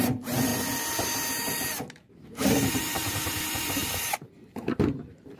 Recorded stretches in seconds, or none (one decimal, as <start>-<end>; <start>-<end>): 0.5-2.7